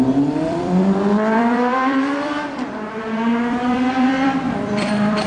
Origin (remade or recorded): remade